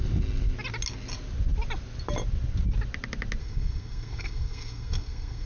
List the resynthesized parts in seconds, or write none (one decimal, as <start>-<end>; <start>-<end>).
3.4-5.5